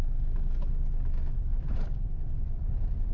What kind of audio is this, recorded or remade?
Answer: recorded